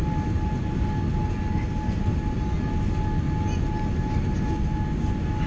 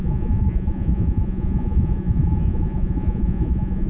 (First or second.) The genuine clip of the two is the first